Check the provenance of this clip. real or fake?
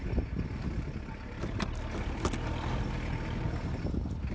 real